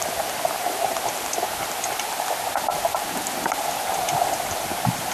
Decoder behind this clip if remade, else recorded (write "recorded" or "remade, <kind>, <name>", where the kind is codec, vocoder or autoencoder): recorded